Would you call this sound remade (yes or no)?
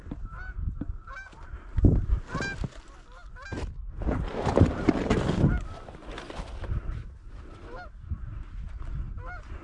no